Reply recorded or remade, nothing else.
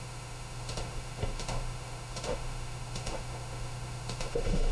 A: remade